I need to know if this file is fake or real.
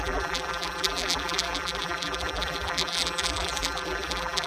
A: fake